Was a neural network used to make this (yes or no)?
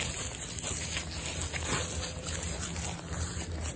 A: no